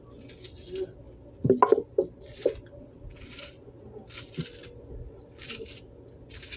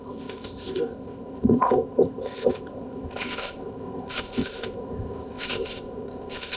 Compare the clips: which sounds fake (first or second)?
second